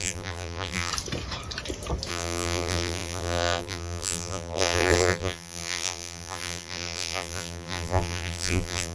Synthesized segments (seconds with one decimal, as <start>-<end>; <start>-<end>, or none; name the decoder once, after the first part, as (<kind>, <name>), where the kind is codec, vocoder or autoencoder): 0.0-0.9 (vocoder, BigVGAN v2); 2.1-8.9